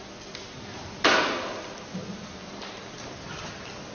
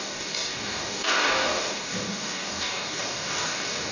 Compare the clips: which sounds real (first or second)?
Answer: first